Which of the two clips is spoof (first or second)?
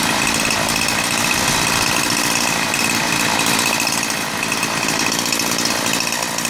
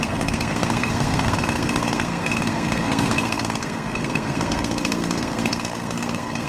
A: second